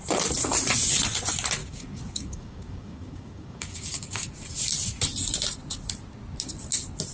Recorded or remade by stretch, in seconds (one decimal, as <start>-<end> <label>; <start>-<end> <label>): 0.0-1.6 recorded; 1.6-4.3 remade; 4.3-7.1 recorded